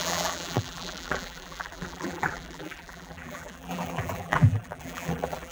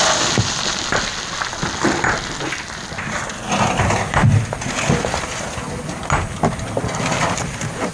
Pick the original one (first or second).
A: second